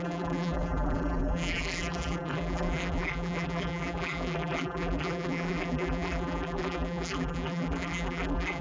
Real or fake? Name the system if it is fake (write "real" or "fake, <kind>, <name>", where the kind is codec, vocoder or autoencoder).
fake, vocoder, BigVGAN v2